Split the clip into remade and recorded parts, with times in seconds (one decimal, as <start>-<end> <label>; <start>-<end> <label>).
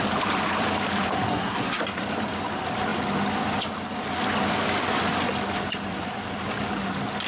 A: 0.0-1.3 recorded; 1.3-1.8 remade; 1.8-7.3 recorded